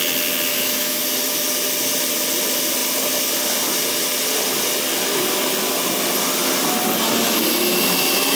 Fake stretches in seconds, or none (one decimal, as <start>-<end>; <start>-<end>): 0.5-1.0